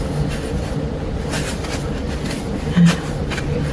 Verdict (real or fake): real